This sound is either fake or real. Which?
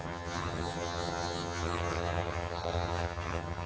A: fake